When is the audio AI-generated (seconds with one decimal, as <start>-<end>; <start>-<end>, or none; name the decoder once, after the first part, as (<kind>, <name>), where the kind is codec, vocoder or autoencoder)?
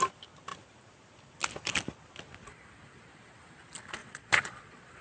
4.0-5.0 (vocoder, Vocos)